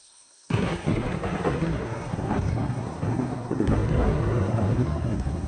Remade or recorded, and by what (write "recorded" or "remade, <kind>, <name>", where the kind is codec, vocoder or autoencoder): remade, codec, SNAC